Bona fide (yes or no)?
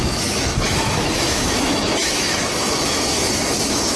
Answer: no